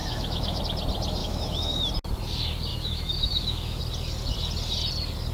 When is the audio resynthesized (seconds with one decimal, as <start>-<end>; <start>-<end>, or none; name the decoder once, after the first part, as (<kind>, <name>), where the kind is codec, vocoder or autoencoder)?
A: 0.0-0.6 (autoencoder, DAC-VAE); 1.2-1.9; 2.7-3.8

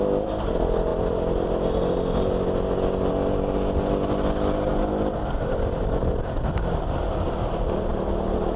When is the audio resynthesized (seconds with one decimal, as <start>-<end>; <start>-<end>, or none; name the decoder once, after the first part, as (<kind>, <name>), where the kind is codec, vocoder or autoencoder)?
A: none

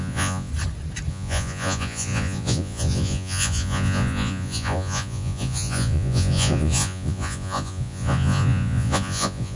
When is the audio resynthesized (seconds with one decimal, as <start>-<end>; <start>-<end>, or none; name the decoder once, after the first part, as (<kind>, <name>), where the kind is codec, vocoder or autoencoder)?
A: 0.0-0.5 (vocoder, Vocos); 1.1-9.6

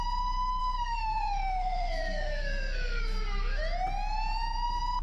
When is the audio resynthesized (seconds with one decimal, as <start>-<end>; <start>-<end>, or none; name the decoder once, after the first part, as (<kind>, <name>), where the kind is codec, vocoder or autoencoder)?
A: 0.6-3.6 (codec, SNAC)

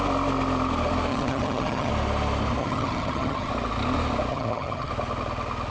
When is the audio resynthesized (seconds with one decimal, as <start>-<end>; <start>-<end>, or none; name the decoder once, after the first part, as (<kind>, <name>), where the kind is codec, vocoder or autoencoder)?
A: 1.1-1.9 (vocoder, HiFi-GAN); 2.6-3.5; 4.3-4.9

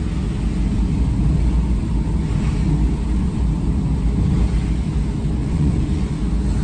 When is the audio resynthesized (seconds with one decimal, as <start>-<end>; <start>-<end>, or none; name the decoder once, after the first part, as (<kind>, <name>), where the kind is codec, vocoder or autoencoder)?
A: 5.4-6.1 (vocoder, Vocos)

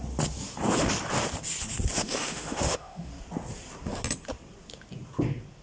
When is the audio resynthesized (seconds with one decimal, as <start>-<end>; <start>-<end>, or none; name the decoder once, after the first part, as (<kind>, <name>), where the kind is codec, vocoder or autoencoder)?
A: 2.0-3.1 (autoencoder, DAC-VAE)

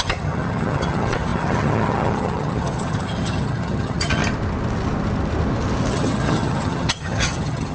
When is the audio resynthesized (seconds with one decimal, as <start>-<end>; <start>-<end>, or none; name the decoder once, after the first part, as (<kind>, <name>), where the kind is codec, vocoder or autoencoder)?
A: 0.0-4.2 (vocoder, HiFi-GAN); 5.9-7.7